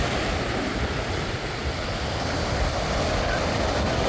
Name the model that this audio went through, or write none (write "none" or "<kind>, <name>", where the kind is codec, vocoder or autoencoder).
none